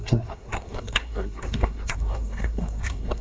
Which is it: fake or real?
fake